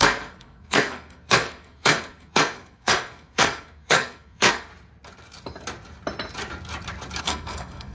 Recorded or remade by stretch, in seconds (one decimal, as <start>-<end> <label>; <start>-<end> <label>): 0.0-4.7 remade; 4.7-7.2 recorded; 7.2-7.9 remade